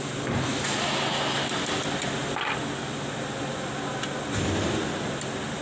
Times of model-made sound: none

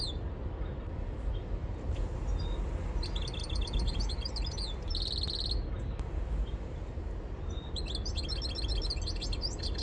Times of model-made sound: 3.4-4.3 (vocoder, BigVGAN v2)

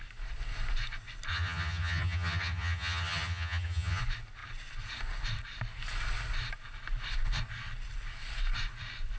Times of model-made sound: 1.3-4.0 (vocoder, HiFi-GAN)

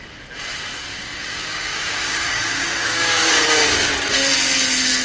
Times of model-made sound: 0.9-3.9 (codec, DAC)